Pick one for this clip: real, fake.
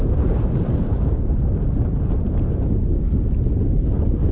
real